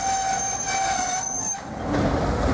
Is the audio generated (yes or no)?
no